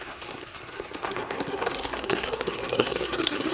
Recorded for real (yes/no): no